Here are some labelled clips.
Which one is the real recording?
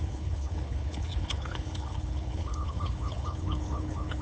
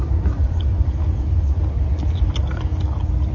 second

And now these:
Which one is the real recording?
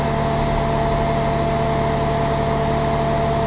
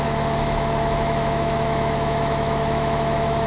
first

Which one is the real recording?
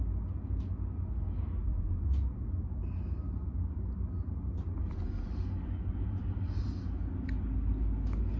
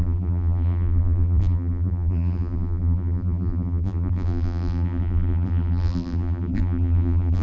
first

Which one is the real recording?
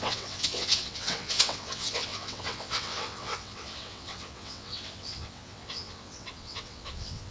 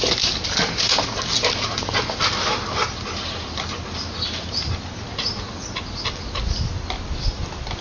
second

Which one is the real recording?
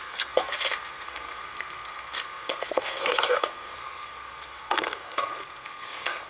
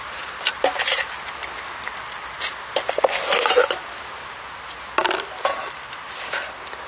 second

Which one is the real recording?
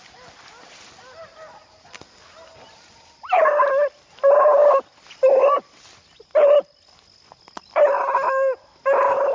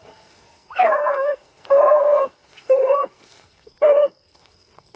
first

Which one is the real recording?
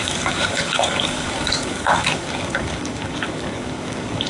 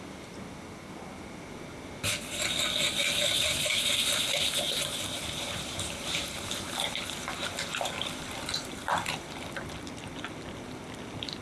second